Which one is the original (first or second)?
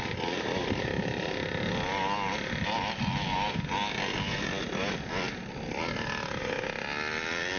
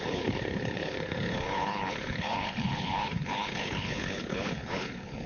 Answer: first